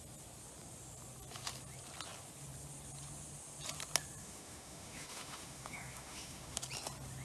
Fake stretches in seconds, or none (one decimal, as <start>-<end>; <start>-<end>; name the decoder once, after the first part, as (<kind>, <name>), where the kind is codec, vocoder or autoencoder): 4.2-6.6 (autoencoder, DAC-VAE)